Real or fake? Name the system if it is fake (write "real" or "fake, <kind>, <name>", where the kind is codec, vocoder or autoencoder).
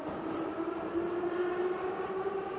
fake, vocoder, BigVGAN v2